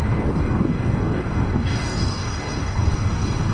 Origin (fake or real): fake